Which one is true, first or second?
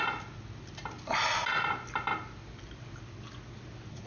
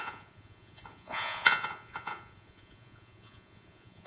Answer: first